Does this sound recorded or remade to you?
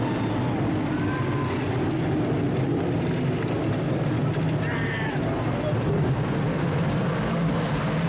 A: recorded